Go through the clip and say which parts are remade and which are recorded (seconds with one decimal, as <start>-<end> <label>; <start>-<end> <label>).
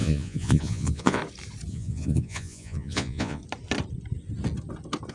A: 0.0-1.2 remade; 1.2-1.7 recorded; 1.7-3.4 remade; 3.4-5.1 recorded